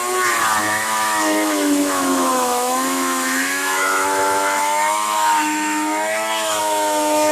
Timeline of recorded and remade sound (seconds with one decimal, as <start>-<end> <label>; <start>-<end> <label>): 0.0-0.6 recorded; 0.6-7.3 remade